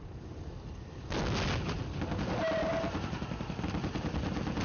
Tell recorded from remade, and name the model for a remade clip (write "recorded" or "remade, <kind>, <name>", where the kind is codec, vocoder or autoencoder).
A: recorded